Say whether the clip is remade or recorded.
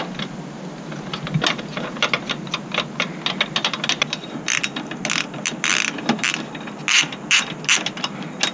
recorded